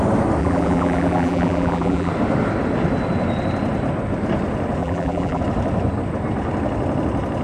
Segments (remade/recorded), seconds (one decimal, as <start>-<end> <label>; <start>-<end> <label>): 0.0-0.4 recorded; 0.4-2.1 remade; 2.1-4.8 recorded; 4.8-5.4 remade; 5.4-7.4 recorded